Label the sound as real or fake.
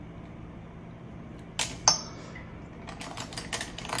real